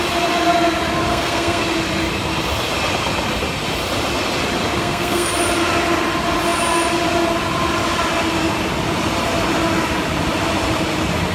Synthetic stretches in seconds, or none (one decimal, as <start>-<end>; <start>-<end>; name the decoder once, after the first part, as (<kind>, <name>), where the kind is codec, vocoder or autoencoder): 1.1-1.6 (codec, SNAC); 4.8-5.3